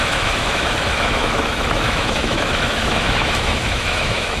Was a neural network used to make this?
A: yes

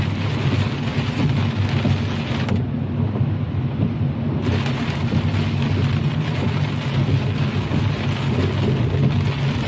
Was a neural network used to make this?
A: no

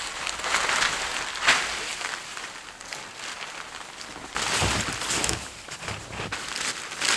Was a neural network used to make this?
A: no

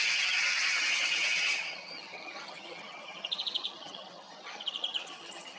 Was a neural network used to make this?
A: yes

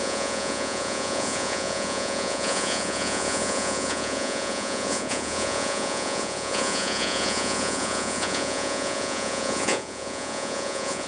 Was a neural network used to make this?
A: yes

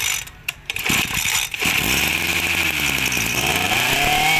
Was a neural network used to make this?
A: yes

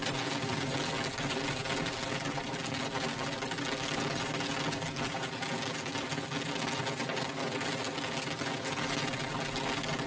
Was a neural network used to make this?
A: no